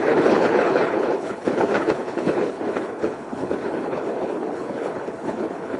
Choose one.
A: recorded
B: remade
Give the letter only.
B